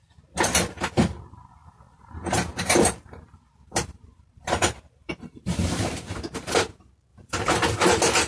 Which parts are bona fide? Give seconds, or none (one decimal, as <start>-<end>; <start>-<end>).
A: 0.0-1.6; 6.5-7.1; 7.9-8.3